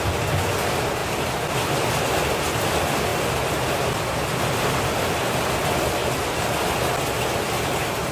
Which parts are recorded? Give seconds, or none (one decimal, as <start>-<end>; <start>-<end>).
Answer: 0.0-8.1